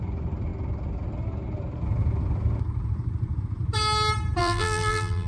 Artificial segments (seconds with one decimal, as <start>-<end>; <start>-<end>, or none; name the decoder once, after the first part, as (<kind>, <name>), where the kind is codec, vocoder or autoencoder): 4.4-5.3 (vocoder, BigVGAN v2)